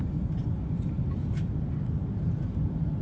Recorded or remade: recorded